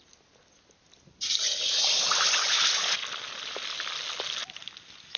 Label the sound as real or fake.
real